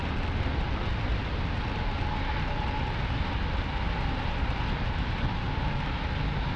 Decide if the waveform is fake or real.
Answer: real